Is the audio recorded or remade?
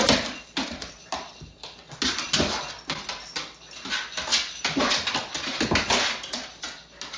recorded